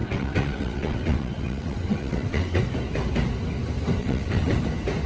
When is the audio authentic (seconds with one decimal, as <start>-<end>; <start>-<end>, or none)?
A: 2.6-4.0; 4.6-5.1